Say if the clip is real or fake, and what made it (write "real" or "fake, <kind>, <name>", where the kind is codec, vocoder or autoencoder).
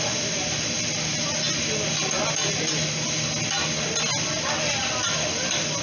real